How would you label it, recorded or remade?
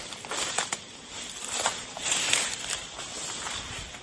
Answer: recorded